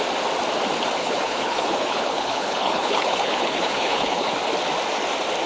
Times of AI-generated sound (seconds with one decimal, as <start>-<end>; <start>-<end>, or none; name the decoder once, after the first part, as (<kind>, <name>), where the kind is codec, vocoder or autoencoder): 1.0-4.3 (codec, HILCodec)